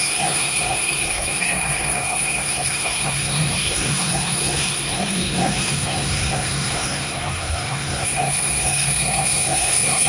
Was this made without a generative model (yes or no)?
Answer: no